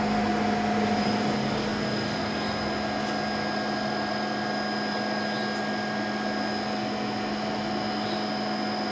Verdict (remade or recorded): recorded